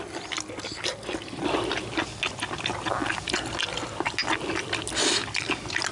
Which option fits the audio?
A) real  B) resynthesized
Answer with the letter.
A